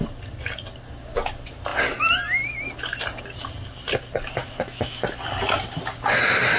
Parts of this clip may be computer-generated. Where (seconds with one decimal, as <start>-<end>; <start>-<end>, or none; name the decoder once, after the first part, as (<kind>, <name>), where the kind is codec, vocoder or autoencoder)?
4.4-5.0 (autoencoder, DAC-VAE)